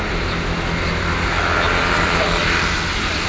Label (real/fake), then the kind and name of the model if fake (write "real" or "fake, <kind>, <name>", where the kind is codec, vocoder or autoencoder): real